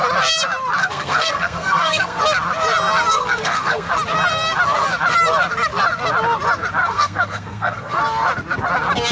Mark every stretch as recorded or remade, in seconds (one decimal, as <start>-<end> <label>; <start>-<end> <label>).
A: 0.0-0.8 recorded; 0.8-2.2 remade; 2.2-3.1 recorded; 3.1-3.9 remade; 3.9-6.8 recorded; 6.8-8.0 remade; 8.0-9.1 recorded